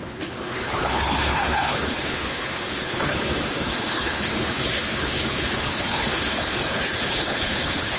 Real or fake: fake